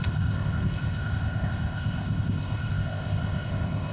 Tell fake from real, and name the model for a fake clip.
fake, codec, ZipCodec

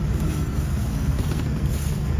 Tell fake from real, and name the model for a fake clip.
fake, codec, SNAC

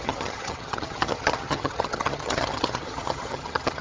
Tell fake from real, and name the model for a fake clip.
fake, vocoder, HiFi-GAN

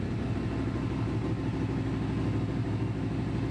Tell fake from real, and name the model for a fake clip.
real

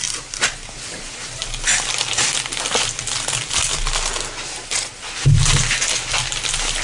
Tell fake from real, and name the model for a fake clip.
real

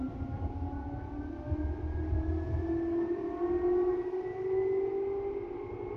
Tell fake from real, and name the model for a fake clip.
real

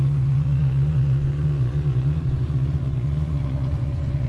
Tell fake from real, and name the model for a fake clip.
fake, vocoder, Vocos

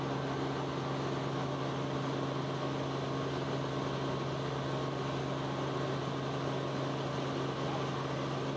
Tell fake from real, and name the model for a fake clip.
real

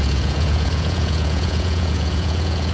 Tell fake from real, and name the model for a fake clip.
fake, vocoder, Vocos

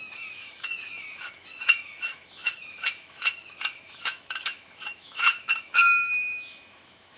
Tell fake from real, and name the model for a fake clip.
fake, autoencoder, DAC-VAE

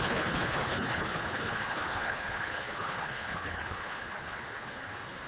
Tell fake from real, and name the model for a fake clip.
fake, codec, HILCodec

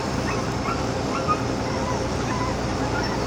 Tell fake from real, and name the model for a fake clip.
real